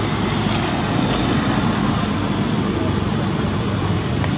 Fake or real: real